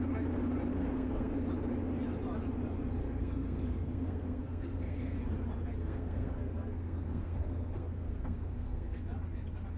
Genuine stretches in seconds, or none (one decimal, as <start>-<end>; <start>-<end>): 0.0-0.7; 1.5-3.0; 5.2-5.8; 9.0-9.8